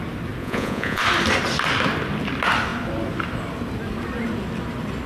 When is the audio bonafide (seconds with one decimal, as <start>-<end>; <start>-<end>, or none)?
0.0-0.4; 1.0-5.1